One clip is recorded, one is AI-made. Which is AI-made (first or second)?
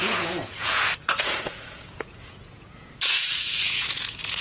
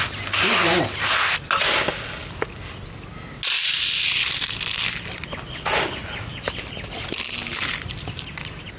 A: first